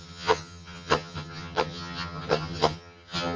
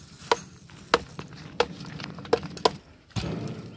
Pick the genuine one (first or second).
second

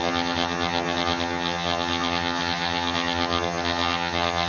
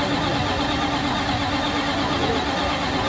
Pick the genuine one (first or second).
second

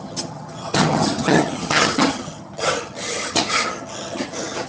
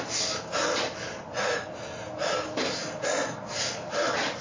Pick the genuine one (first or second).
second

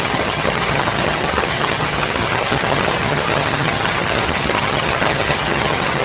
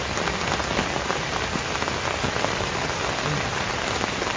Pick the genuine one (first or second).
second